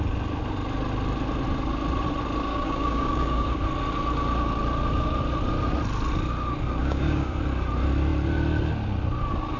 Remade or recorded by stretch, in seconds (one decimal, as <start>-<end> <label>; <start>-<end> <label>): 0.0-2.5 recorded; 2.5-3.6 remade; 3.6-6.8 recorded; 6.8-7.4 remade; 7.4-9.6 recorded